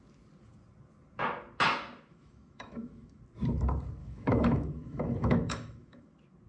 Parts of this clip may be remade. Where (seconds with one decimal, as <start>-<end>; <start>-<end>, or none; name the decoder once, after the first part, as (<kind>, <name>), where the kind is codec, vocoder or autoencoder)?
2.1-3.2 (autoencoder, DAC-VAE); 4.0-6.1